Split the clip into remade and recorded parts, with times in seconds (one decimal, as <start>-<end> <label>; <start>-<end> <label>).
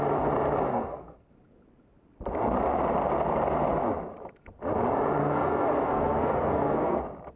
0.0-0.7 recorded; 0.7-1.3 remade; 1.3-5.2 recorded; 5.2-7.0 remade; 7.0-7.4 recorded